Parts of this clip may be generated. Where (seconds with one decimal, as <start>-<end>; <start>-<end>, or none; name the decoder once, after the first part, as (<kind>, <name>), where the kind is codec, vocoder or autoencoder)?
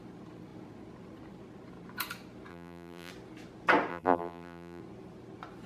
2.5-3.1 (vocoder, BigVGAN v2); 3.9-4.8